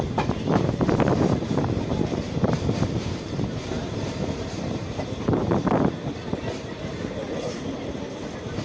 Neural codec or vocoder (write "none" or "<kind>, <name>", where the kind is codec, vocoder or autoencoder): vocoder, BigVGAN v2